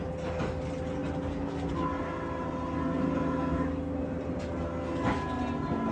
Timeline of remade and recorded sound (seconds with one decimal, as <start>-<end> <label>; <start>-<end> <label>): 0.0-5.9 recorded